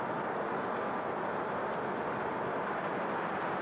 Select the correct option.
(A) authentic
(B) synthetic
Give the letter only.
A